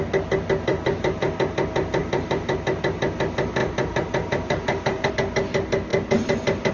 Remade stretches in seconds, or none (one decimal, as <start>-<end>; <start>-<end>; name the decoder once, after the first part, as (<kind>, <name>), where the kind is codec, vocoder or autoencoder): 0.7-1.3 (vocoder, BigVGAN v2); 2.0-2.8; 3.6-5.1

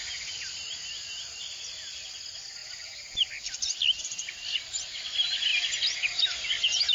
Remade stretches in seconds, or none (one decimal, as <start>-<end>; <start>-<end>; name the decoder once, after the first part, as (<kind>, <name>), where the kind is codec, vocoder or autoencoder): 0.0-0.9 (vocoder, BigVGAN v2)

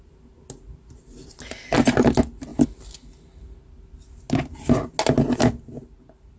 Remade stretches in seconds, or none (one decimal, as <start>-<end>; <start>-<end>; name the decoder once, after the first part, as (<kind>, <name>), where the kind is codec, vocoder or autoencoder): none

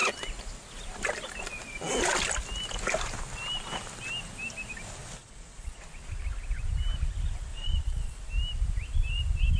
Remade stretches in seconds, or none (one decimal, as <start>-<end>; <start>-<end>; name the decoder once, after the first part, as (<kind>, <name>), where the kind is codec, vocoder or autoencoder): 5.2-5.8 (vocoder, Vocos); 7.5-8.2

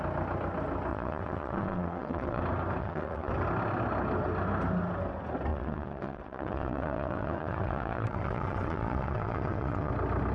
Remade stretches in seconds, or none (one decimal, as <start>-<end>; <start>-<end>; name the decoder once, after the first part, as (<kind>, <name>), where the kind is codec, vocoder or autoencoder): 0.9-2.4 (vocoder, WaveNeXt); 2.8-3.3; 5.5-9.9

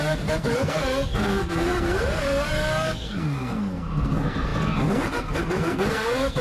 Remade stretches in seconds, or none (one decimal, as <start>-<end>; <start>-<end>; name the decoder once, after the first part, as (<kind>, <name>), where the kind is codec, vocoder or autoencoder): 0.0-6.4 (codec, SNAC)

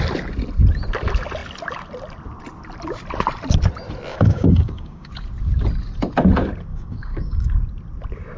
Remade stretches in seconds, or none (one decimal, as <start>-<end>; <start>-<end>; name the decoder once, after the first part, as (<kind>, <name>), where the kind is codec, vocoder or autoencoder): 4.1-5.1 (codec, DAC); 6.7-7.5

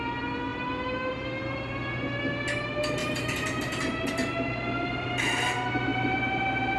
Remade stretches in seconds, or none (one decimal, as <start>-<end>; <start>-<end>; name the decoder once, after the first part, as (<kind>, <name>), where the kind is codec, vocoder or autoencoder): 3.0-4.1 (vocoder, BigVGAN v2); 5.9-6.8